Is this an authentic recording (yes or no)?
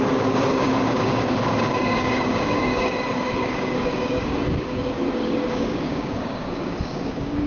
no